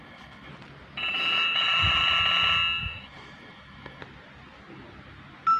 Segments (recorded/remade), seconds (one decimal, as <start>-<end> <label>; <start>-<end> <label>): 0.0-0.5 remade; 0.5-1.1 recorded; 1.1-2.0 remade; 2.0-2.8 recorded; 2.8-4.0 remade; 4.0-5.6 recorded